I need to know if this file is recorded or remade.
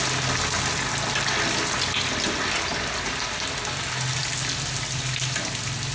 recorded